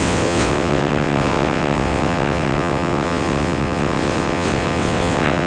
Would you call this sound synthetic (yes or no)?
yes